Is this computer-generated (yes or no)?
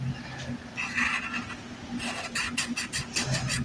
no